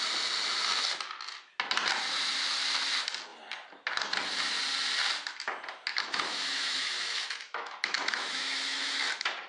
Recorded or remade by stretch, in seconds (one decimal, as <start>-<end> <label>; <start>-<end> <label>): 0.0-5.9 recorded; 5.9-9.0 remade; 9.0-9.5 recorded